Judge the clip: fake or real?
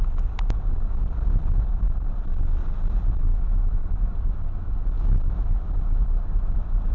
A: real